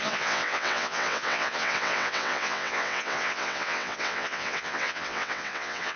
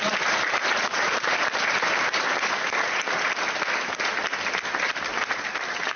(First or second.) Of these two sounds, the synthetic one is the first